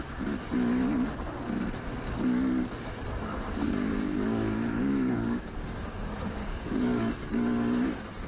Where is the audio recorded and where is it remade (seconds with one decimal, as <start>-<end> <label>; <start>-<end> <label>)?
0.0-3.6 recorded; 3.6-6.8 remade; 6.8-8.3 recorded